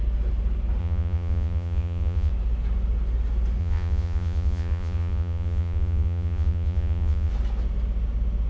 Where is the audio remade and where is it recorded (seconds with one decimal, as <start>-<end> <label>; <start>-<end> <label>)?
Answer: 0.0-0.8 recorded; 0.8-2.3 remade; 2.3-3.6 recorded; 3.6-7.3 remade; 7.3-8.5 recorded